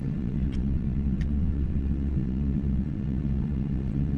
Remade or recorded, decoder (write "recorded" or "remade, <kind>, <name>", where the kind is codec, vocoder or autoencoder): remade, vocoder, WaveNeXt